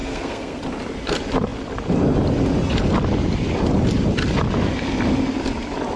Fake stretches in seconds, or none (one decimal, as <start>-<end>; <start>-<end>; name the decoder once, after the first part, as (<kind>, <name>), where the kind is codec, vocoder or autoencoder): 0.0-0.6 (codec, SNAC)